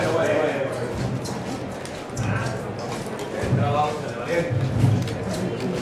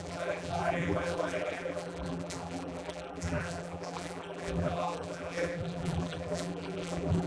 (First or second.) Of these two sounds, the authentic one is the first